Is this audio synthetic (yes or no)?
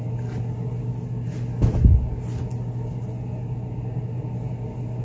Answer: no